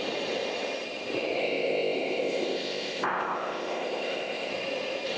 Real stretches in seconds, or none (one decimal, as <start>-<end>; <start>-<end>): 0.0-1.4; 4.5-5.2